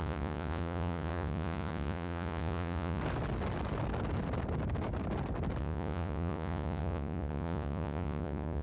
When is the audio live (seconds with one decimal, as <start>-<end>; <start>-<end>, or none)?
3.0-5.6